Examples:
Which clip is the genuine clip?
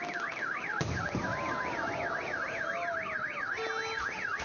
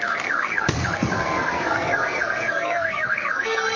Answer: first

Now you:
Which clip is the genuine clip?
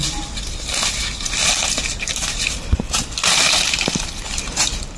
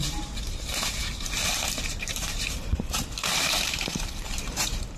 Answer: first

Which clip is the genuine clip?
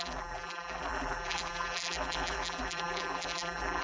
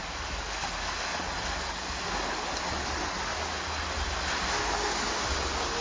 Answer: second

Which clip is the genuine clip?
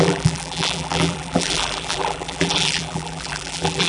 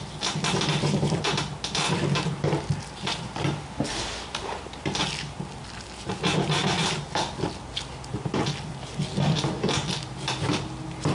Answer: second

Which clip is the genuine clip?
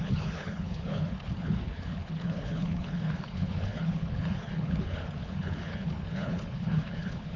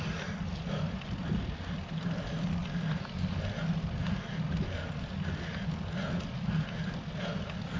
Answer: second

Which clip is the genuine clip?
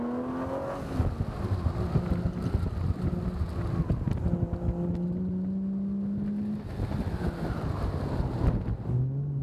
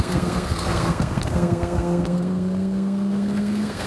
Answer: first